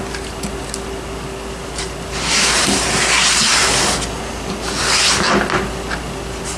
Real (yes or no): yes